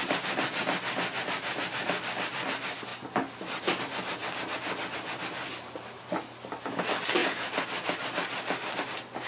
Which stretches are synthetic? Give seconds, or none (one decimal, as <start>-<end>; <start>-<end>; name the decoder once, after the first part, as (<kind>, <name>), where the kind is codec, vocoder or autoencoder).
none